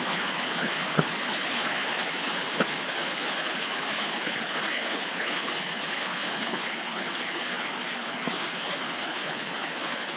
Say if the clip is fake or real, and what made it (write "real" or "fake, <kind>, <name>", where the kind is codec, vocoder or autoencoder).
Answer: fake, codec, HILCodec